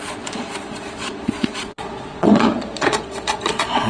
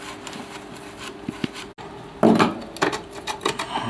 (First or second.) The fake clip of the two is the first